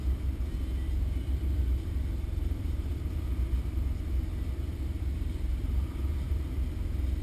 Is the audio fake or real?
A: fake